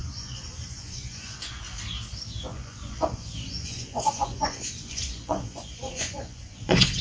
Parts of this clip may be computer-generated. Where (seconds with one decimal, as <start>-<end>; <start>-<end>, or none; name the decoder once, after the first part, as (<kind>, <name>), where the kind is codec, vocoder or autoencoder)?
0.0-1.6 (vocoder, Vocos); 2.5-7.0